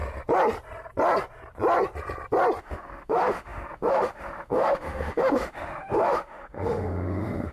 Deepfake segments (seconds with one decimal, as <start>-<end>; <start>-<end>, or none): 2.6-7.5

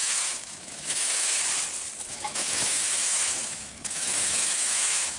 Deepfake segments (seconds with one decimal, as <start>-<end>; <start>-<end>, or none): 0.0-1.4; 2.1-5.2

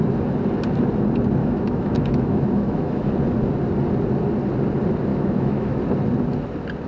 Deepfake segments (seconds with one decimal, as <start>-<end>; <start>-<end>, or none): 1.4-3.1; 5.1-5.8

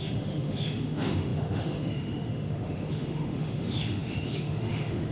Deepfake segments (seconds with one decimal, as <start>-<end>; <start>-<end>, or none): 0.0-5.1

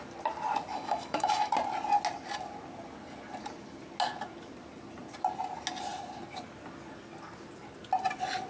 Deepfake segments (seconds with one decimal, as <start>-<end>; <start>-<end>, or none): 0.7-1.5

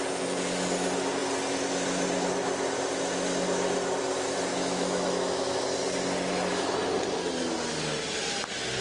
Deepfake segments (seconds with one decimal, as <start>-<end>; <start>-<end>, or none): 4.5-5.6

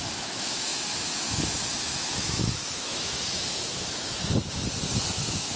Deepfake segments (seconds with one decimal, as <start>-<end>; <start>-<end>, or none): 0.0-4.2; 5.1-5.6